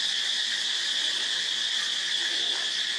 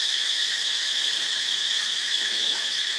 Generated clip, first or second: second